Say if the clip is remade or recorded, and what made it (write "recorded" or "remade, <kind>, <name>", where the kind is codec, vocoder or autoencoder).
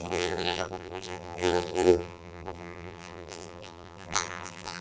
remade, vocoder, BigVGAN v2